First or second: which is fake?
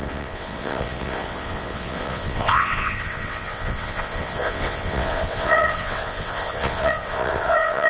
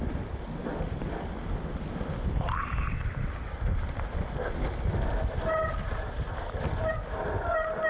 first